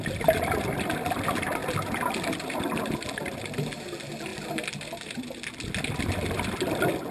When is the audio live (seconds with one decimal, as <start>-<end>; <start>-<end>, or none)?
0.0-7.1